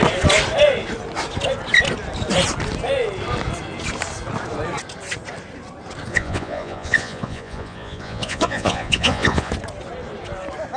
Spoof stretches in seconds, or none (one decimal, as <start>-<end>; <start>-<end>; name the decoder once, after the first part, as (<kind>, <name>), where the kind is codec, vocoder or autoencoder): 6.1-9.5 (vocoder, Vocos)